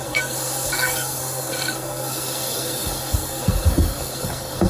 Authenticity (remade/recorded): remade